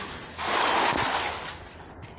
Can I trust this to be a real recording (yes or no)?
yes